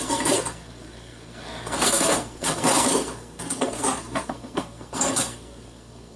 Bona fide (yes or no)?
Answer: no